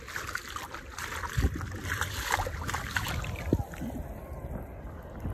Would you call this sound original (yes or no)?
yes